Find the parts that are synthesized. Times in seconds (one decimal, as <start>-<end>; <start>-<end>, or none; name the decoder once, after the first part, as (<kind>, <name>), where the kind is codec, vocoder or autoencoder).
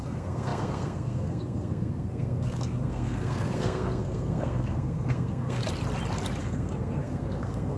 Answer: 0.0-5.6 (codec, SNAC); 6.4-7.8